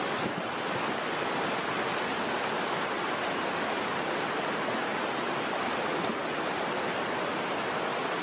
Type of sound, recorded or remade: recorded